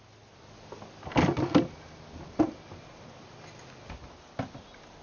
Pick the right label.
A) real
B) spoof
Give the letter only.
A